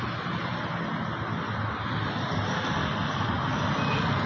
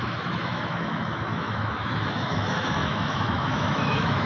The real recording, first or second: first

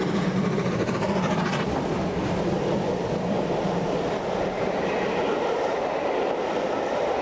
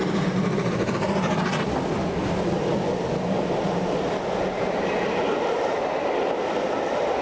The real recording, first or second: second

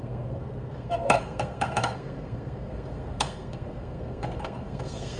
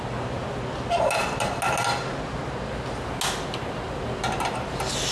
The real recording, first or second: second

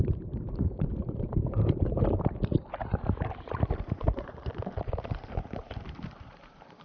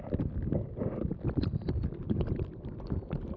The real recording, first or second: second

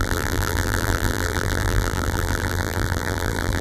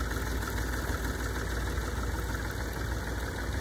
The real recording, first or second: second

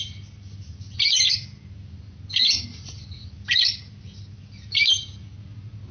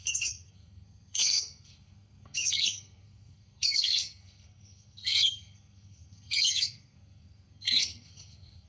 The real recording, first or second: first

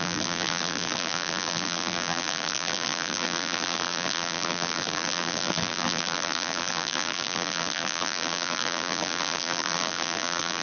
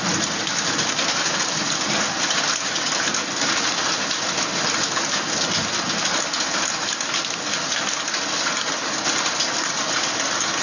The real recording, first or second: second